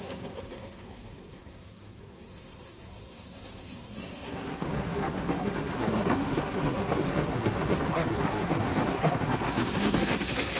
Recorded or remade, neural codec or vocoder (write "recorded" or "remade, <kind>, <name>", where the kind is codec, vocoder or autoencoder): remade, codec, SNAC